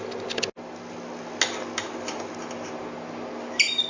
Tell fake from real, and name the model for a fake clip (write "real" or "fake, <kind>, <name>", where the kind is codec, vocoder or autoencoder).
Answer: real